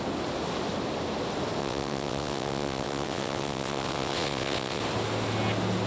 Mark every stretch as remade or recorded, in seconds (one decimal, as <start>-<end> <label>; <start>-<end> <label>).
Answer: 0.0-1.6 recorded; 1.6-4.8 remade; 4.8-5.9 recorded